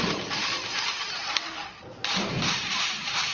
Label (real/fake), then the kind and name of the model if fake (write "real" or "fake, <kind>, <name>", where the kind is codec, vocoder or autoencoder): fake, vocoder, BigVGAN v2